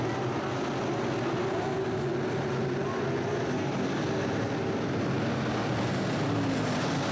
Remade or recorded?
recorded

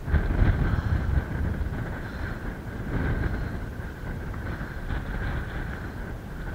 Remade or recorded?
recorded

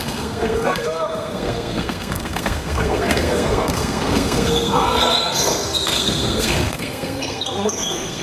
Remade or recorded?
remade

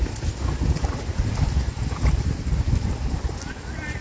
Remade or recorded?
recorded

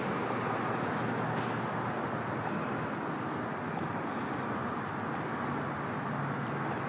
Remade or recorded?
recorded